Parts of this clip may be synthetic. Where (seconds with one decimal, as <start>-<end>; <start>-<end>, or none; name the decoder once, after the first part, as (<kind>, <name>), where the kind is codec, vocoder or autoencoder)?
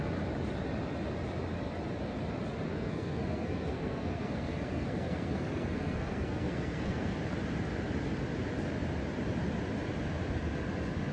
2.7-7.2 (codec, SNAC)